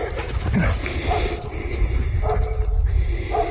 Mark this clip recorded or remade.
recorded